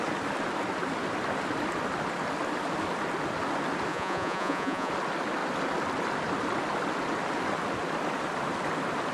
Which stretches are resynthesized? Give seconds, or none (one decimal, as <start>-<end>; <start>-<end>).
3.9-4.9